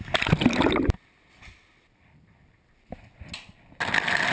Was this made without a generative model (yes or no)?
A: yes